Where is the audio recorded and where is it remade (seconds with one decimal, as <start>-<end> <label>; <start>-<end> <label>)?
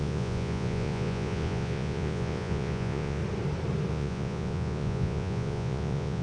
0.0-3.2 remade; 3.2-3.9 recorded; 3.9-6.2 remade